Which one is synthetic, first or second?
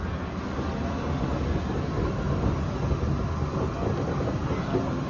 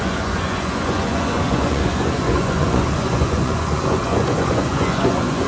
second